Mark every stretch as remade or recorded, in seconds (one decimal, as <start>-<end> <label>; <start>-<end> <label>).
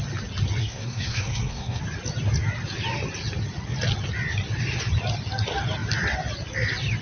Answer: 0.0-0.6 recorded; 0.6-1.8 remade; 1.8-7.0 recorded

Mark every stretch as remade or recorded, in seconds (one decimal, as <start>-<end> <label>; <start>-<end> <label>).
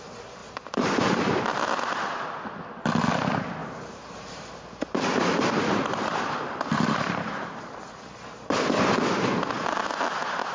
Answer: 0.0-0.4 recorded; 0.4-1.4 remade; 1.4-3.6 recorded; 3.6-7.5 remade; 7.5-10.5 recorded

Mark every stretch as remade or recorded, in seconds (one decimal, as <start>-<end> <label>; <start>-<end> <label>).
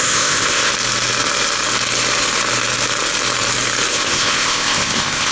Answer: 0.0-0.7 remade; 0.7-3.9 recorded; 3.9-5.3 remade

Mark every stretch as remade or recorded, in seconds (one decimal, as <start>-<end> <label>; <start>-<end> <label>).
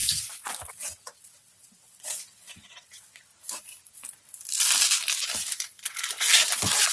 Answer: 0.0-0.7 recorded; 0.7-3.3 remade; 3.3-6.9 recorded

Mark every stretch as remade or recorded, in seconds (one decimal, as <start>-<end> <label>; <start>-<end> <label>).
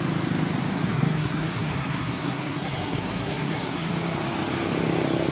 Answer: 0.0-0.7 recorded; 0.7-3.9 remade; 3.9-5.3 recorded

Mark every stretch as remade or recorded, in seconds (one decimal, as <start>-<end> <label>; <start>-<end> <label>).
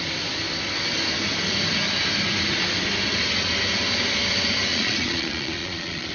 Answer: 0.0-4.7 recorded; 4.7-6.1 remade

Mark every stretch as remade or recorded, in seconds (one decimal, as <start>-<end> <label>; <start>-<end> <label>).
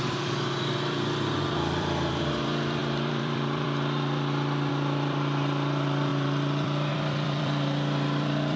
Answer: 0.0-8.6 remade